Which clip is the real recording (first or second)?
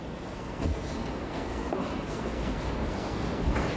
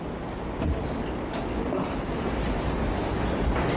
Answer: second